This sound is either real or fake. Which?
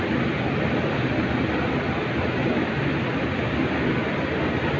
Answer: real